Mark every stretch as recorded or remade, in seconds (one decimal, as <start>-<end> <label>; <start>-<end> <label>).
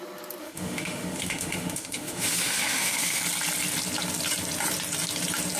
0.0-0.4 recorded; 0.4-3.2 remade; 3.2-5.6 recorded